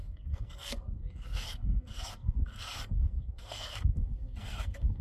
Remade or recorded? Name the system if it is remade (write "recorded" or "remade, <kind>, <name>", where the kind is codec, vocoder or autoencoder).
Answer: remade, codec, SNAC